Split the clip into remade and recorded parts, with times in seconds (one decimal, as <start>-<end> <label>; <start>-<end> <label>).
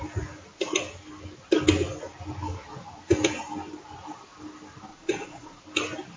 0.0-4.9 recorded; 4.9-5.6 remade; 5.6-6.2 recorded